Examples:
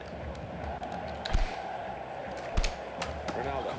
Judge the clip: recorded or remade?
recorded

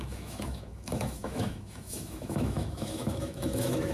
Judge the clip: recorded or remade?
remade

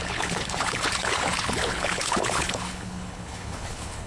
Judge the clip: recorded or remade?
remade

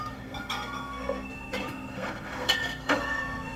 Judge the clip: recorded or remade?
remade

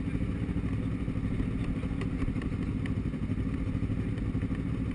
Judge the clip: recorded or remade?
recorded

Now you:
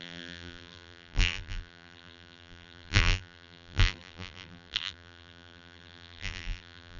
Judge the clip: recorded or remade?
remade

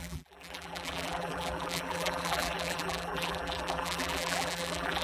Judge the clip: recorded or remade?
remade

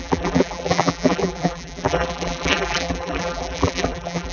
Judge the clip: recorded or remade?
remade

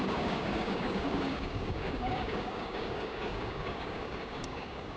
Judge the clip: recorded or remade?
remade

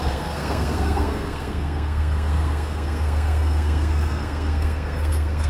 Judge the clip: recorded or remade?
remade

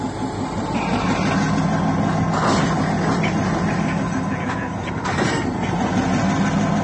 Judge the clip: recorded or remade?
recorded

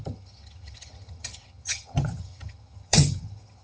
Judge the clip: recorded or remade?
remade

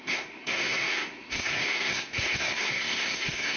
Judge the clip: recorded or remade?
remade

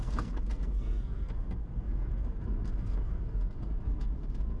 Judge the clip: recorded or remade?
remade